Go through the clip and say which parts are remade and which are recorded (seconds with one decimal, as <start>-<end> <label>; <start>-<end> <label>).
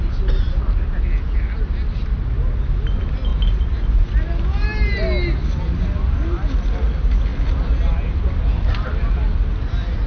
0.0-10.1 recorded